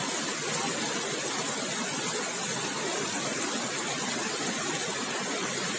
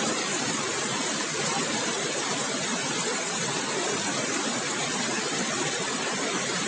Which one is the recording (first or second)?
first